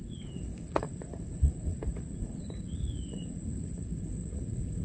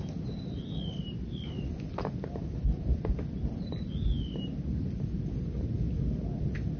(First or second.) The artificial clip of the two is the first